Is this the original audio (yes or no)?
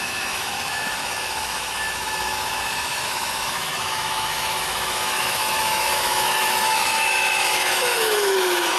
no